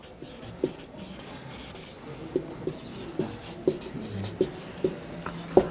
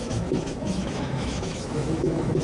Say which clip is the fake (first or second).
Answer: second